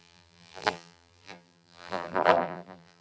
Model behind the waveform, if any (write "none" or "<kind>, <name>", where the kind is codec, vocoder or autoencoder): vocoder, BigVGAN v2